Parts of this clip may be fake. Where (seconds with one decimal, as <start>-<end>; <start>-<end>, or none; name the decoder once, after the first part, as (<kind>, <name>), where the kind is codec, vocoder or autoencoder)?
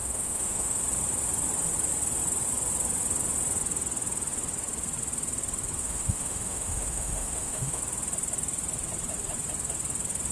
0.0-0.8 (autoencoder, DAC-VAE); 5.8-7.8